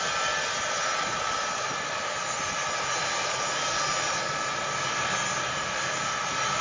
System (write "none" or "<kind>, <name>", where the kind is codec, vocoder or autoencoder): none